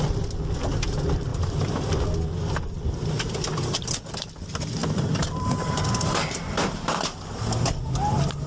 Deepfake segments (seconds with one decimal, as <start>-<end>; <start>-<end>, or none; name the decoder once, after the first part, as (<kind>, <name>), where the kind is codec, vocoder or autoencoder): 1.3-1.9 (vocoder, BigVGAN v2); 4.8-7.0